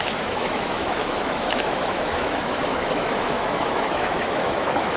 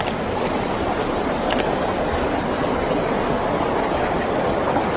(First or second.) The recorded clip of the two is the second